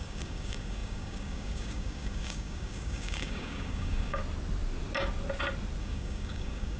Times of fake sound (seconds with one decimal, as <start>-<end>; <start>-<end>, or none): 0.0-4.2; 5.8-6.8